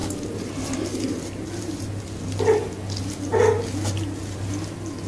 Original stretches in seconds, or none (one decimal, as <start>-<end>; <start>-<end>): 0.0-5.1